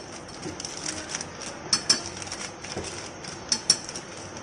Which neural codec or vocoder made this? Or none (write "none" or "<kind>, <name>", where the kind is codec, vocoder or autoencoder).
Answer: none